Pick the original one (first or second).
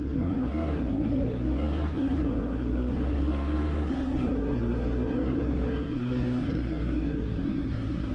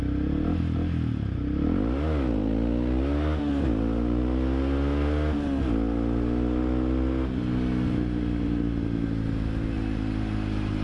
second